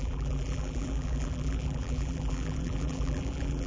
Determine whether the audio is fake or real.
fake